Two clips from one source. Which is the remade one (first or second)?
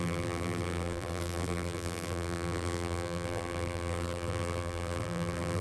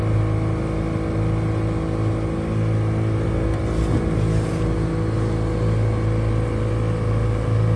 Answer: first